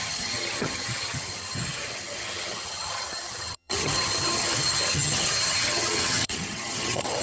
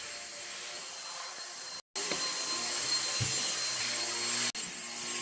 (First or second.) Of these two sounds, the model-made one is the first